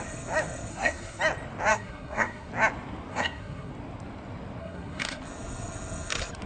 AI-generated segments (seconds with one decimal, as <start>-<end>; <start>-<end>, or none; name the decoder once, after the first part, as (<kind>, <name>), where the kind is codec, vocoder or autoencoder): 0.7-1.2 (codec, SNAC); 1.7-2.5; 3.1-3.7; 4.6-5.2